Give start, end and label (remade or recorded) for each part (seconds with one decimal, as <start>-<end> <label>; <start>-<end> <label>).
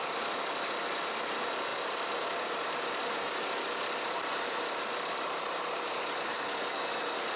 0.0-7.4 recorded